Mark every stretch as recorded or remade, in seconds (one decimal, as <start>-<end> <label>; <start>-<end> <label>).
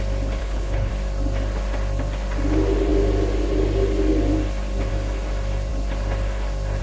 0.0-0.4 recorded; 0.4-0.9 remade; 0.9-6.8 recorded